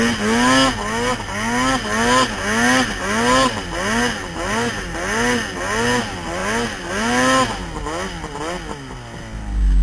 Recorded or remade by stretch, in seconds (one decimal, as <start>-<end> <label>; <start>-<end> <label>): 0.0-9.8 recorded